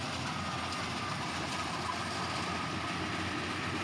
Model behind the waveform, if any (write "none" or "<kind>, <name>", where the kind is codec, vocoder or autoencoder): vocoder, BigVGAN v2